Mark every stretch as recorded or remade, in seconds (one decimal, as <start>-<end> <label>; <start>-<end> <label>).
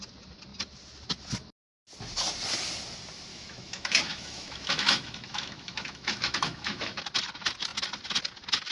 0.0-3.3 recorded; 3.3-7.0 remade; 7.0-8.7 recorded